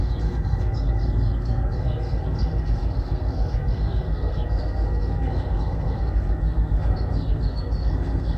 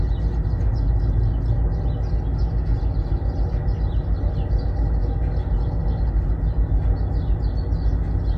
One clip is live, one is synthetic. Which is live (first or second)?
second